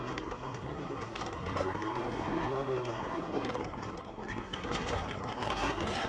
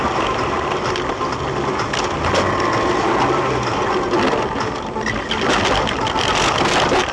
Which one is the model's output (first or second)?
first